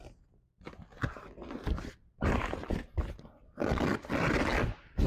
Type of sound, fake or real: real